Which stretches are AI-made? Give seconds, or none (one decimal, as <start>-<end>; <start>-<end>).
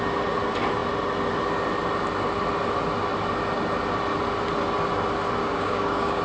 5.4-6.2